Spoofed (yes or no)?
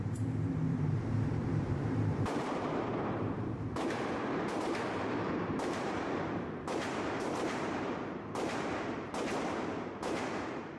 yes